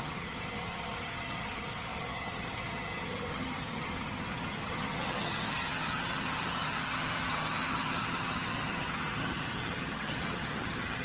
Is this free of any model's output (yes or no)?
no